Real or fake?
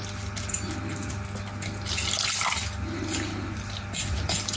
real